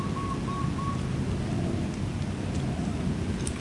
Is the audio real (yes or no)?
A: yes